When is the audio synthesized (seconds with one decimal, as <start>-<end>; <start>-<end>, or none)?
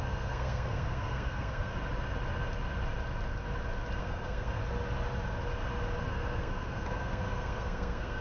0.0-1.7; 4.0-4.6; 6.0-8.2